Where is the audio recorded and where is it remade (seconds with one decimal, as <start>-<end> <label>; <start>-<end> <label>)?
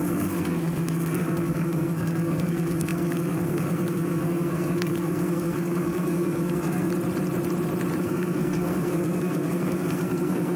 0.0-6.9 remade; 6.9-8.0 recorded; 8.0-10.6 remade